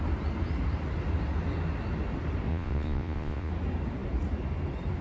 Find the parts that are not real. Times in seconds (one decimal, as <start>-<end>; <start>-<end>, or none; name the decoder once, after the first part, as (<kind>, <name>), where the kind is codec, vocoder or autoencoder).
2.5-3.5 (vocoder, Vocos)